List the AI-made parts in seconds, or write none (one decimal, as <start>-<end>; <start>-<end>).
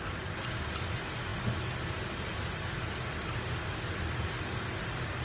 none